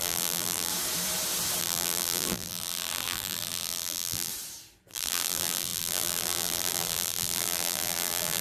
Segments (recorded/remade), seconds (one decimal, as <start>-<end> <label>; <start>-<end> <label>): 0.0-0.7 remade; 0.7-1.6 recorded; 1.6-4.3 remade; 4.3-4.9 recorded; 4.9-8.4 remade